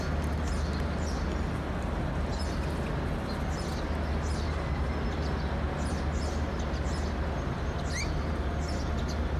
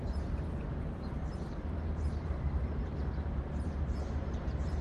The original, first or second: first